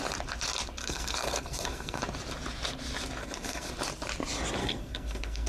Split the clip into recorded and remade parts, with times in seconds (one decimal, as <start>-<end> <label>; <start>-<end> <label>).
0.0-0.8 recorded; 0.8-2.0 remade; 2.0-3.2 recorded; 3.2-3.7 remade; 3.7-4.6 recorded; 4.6-5.5 remade